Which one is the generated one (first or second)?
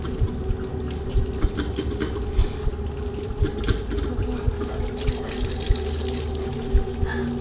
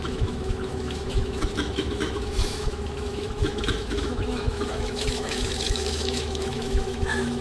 second